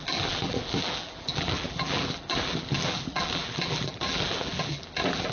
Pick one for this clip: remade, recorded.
remade